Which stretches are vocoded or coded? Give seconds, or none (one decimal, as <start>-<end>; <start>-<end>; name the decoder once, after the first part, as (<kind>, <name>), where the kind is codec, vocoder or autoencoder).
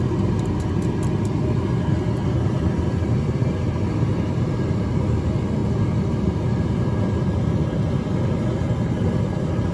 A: none